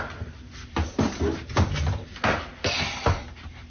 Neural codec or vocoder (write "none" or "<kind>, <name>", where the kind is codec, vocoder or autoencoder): none